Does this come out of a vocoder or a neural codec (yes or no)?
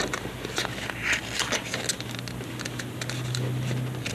no